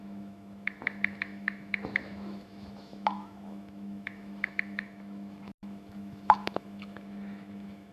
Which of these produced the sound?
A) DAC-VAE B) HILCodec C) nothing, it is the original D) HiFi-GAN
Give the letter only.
A